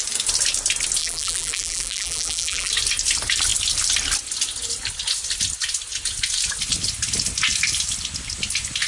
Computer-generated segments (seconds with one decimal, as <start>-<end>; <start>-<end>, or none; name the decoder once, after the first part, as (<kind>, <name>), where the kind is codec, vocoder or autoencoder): 1.0-2.7 (vocoder, BigVGAN v2)

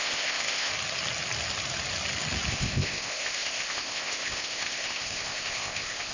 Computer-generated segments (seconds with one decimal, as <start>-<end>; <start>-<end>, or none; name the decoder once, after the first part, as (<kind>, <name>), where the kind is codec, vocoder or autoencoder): 0.0-0.7 (codec, ZipCodec); 2.5-6.1

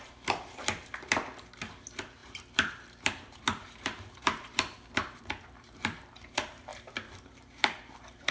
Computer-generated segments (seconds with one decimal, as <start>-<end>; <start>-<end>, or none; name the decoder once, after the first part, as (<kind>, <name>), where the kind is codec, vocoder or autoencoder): 0.0-8.3 (vocoder, BigVGAN v2)

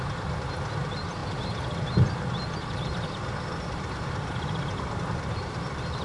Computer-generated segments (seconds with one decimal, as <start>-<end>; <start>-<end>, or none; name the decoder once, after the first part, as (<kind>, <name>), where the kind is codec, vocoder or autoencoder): none